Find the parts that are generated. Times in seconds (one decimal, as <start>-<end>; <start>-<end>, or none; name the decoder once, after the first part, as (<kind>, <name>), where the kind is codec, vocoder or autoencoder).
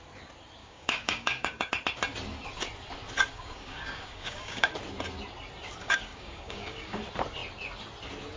0.6-1.7 (codec, DAC); 3.3-4.7; 5.8-7.0